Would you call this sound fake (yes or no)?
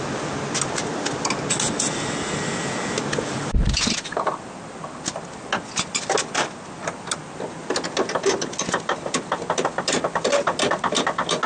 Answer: no